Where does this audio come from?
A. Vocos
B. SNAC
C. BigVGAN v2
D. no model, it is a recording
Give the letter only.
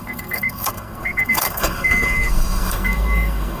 B